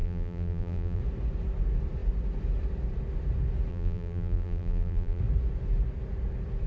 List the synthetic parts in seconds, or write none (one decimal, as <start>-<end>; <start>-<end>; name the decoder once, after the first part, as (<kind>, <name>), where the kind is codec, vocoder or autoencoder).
0.0-1.0 (vocoder, BigVGAN v2); 3.7-5.2